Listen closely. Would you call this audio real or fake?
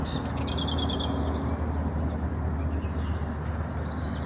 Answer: real